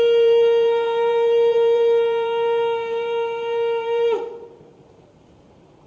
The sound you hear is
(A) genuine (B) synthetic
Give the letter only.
B